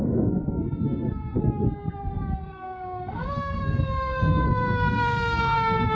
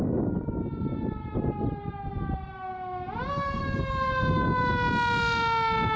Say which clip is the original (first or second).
second